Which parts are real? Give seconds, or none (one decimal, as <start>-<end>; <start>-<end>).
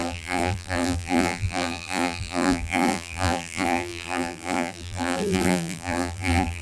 none